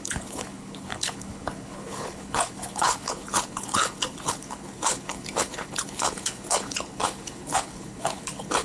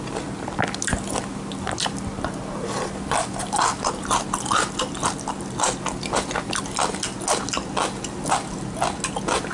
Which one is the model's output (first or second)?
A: first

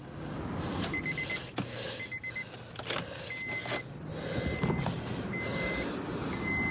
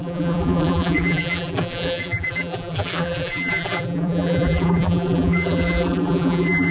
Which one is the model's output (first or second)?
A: second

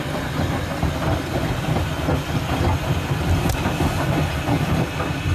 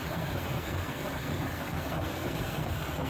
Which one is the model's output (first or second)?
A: second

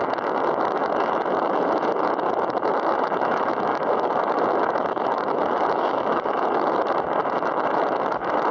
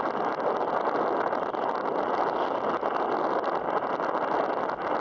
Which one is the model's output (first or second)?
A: first